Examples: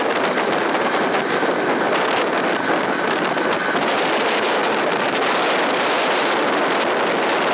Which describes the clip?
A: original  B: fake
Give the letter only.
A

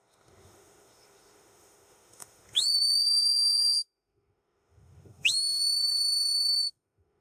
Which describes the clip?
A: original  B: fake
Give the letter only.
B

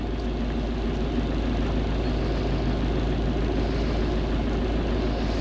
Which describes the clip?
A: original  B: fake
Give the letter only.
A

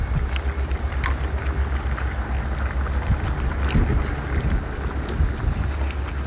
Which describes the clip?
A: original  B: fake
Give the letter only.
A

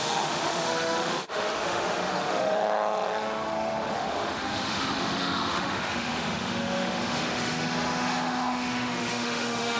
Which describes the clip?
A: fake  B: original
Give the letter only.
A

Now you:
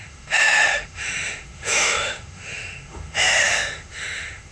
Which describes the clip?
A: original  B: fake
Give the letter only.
B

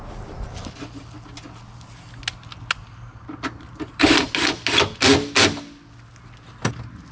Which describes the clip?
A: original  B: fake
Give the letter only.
A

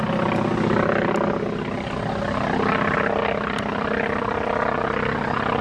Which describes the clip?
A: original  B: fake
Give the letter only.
A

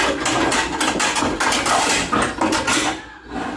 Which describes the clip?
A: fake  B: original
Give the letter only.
B